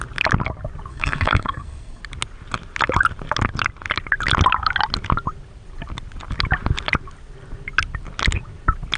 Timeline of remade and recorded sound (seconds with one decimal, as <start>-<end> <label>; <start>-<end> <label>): 0.0-0.9 recorded; 0.9-2.0 remade; 2.0-9.0 recorded